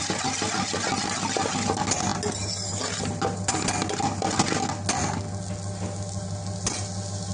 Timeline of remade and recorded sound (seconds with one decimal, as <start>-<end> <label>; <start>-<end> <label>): 0.0-7.3 recorded